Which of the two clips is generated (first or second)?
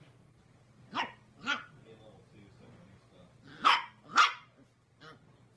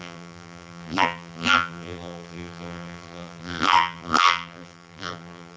second